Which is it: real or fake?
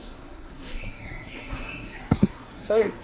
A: fake